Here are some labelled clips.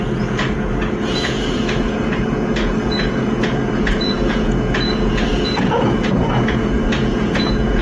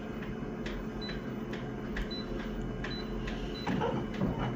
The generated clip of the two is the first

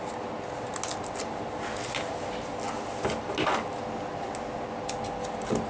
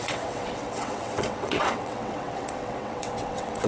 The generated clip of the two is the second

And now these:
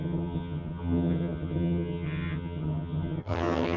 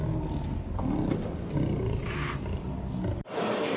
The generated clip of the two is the first